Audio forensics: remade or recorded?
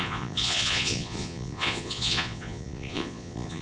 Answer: remade